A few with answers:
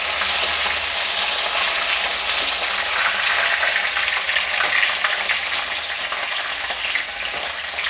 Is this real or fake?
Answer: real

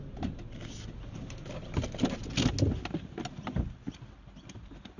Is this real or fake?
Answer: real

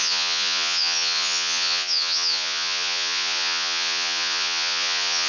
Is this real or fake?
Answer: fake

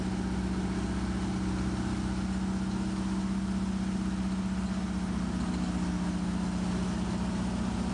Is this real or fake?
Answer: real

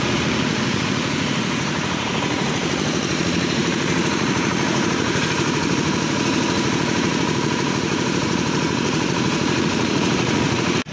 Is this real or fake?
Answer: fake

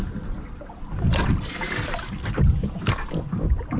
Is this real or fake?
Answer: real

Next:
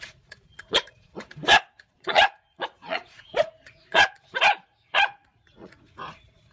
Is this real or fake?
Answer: fake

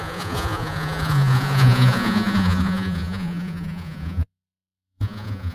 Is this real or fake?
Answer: fake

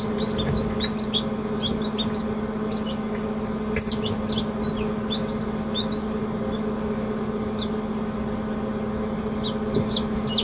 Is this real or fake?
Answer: real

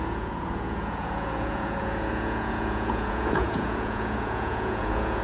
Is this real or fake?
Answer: fake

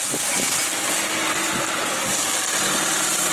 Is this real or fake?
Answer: real